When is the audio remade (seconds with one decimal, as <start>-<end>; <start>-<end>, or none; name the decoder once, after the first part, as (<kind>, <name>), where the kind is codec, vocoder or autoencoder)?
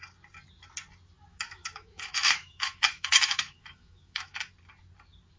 1.3-4.5 (autoencoder, DAC-VAE)